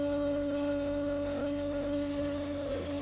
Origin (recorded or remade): remade